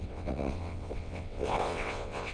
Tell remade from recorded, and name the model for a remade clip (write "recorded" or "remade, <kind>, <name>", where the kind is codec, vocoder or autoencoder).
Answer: remade, vocoder, WaveNeXt